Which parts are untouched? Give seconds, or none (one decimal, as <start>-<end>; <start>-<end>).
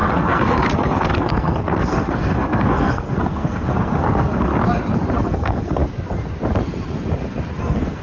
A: 4.5-5.1; 5.8-7.6